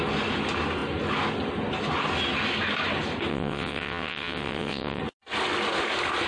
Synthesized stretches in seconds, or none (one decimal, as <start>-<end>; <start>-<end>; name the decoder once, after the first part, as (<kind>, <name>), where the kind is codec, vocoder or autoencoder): 3.3-5.0 (vocoder, WaveNeXt)